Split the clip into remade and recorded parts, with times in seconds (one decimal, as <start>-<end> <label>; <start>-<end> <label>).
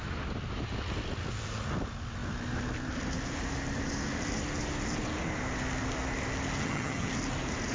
0.0-6.6 recorded; 6.6-7.1 remade; 7.1-7.7 recorded